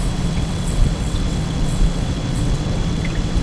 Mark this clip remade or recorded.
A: remade